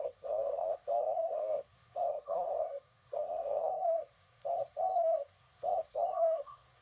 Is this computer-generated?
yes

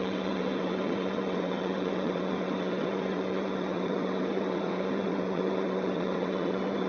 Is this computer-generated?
yes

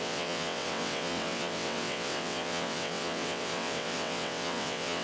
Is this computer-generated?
yes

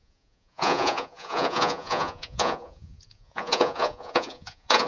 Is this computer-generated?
yes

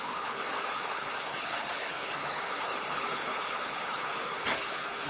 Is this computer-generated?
yes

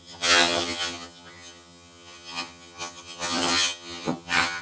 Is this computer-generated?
yes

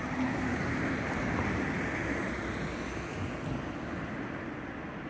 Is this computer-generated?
no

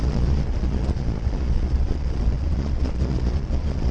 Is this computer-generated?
yes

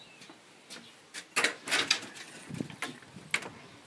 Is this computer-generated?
no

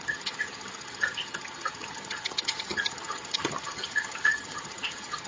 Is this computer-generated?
yes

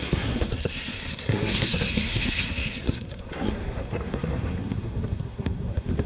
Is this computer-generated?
yes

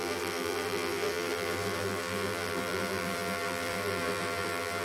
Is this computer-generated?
yes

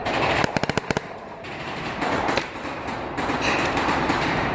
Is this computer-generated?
yes